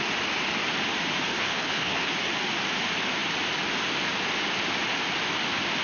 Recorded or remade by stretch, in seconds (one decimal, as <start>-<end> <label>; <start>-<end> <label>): 0.0-1.3 recorded; 1.3-2.1 remade; 2.1-5.8 recorded